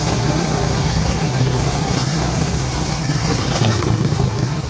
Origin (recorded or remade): remade